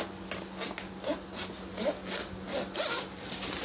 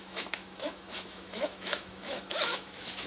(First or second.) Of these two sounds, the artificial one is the second